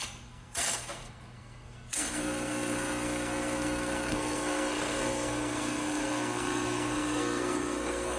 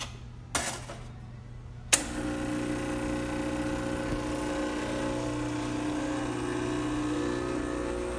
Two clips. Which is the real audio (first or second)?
second